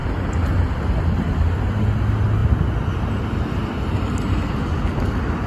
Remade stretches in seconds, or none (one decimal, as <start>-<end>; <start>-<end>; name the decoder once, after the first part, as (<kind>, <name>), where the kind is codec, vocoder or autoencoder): 0.0-0.8 (vocoder, BigVGAN v2)